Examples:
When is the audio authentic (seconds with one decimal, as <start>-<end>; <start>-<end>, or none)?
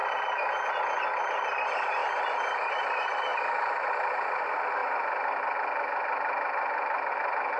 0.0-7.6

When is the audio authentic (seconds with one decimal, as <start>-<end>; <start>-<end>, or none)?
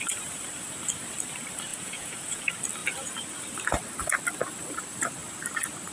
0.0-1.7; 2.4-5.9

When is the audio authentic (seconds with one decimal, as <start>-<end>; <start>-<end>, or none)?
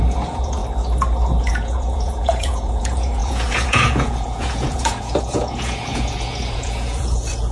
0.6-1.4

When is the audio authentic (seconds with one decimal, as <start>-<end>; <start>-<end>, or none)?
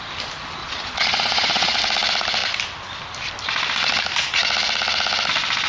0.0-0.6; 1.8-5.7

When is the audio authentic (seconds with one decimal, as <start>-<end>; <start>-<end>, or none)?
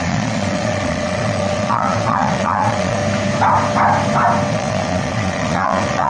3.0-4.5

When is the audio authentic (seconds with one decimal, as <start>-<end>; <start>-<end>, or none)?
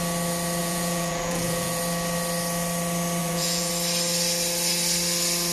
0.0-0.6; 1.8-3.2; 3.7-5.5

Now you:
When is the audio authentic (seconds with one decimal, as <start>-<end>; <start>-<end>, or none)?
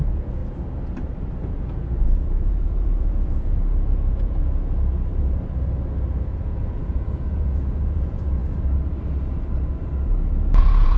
0.4-1.5; 4.4-6.2; 8.4-10.6